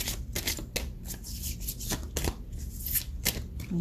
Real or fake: real